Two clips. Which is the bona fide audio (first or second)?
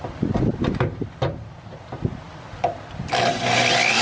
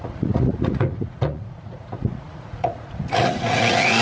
first